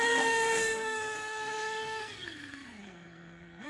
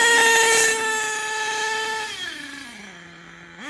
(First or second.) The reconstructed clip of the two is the first